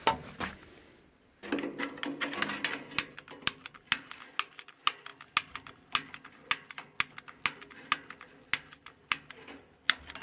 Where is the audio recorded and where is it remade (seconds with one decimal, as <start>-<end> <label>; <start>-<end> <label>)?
0.0-10.2 recorded